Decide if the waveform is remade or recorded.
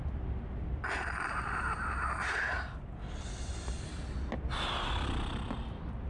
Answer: recorded